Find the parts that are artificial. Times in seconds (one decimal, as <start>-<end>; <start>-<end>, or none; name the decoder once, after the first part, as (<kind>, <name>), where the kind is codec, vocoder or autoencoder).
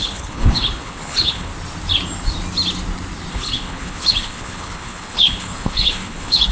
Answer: 0.0-1.5 (codec, HILCodec); 3.3-6.5